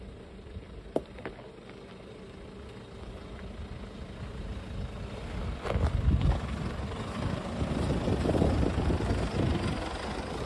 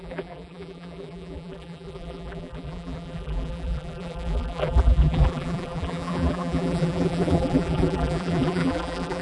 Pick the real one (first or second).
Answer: first